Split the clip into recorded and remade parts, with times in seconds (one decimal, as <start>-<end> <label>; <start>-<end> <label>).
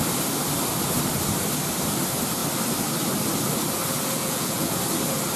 0.0-4.2 recorded; 4.2-4.8 remade; 4.8-5.4 recorded